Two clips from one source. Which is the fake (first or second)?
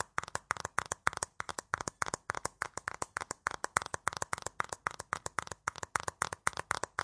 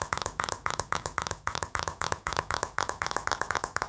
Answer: second